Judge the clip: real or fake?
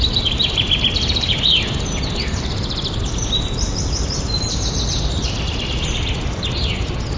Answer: real